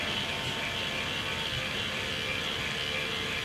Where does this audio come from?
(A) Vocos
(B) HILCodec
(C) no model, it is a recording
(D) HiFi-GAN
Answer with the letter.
C